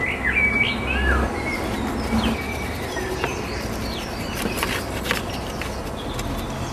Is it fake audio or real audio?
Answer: real